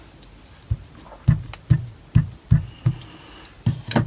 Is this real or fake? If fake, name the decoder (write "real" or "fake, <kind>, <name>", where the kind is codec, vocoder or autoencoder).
real